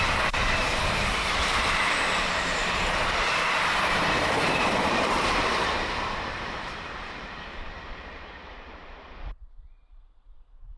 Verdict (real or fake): fake